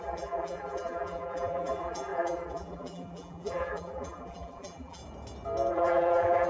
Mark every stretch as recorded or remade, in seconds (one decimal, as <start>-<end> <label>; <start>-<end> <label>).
0.0-5.0 remade; 5.0-5.7 recorded; 5.7-6.5 remade